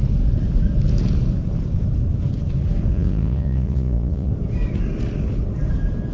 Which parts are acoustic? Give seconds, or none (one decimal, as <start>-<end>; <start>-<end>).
0.0-2.9; 4.3-6.1